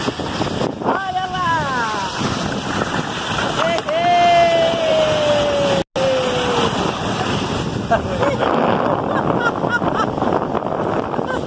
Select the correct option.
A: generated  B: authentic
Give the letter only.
B